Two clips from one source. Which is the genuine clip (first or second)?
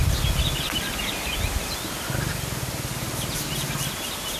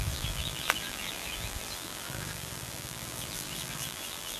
first